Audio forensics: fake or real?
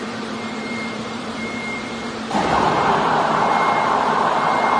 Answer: fake